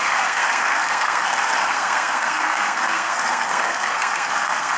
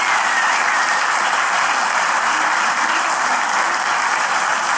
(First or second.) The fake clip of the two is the first